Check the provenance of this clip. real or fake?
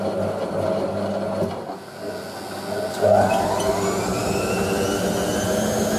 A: real